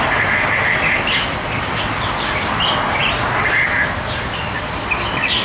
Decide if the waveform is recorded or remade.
recorded